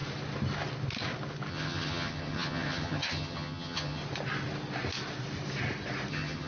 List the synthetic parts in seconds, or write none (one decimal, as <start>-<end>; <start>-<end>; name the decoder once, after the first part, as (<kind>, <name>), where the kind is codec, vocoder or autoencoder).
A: 1.5-4.0 (vocoder, HiFi-GAN); 6.1-6.5